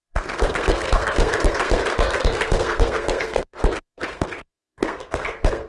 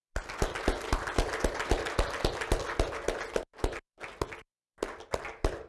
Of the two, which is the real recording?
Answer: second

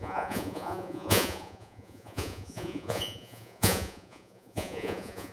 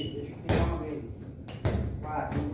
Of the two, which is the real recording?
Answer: second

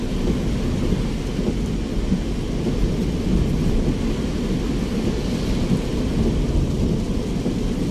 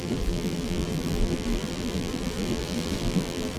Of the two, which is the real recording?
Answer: first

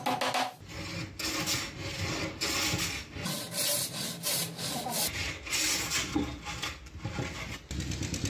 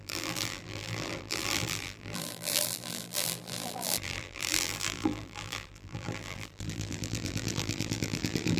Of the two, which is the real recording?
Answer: first